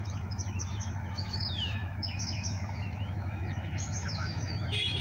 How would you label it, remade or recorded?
remade